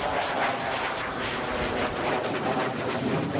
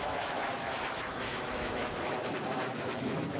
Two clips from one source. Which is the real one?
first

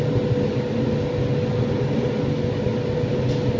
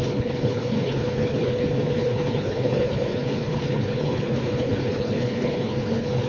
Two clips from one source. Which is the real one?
first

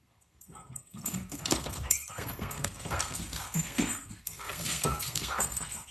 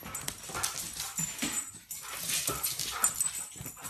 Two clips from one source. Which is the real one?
second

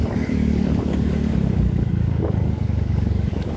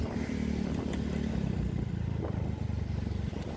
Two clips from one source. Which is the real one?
second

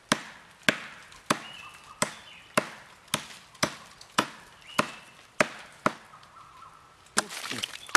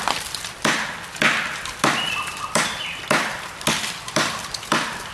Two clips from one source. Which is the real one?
first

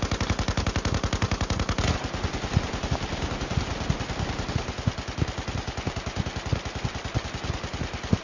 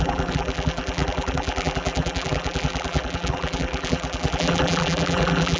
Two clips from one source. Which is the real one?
first